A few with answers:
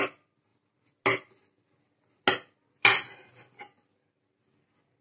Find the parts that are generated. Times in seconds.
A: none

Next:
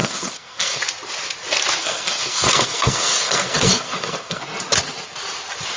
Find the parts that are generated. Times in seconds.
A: 0.0-0.8 (codec, SNAC); 1.8-4.4